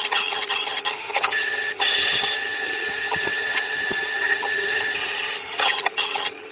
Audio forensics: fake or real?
fake